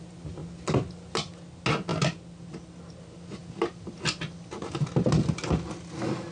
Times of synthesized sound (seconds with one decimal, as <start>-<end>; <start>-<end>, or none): none